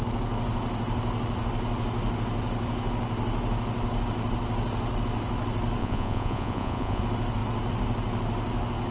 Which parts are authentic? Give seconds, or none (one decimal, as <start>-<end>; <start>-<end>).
0.0-5.8; 7.0-8.9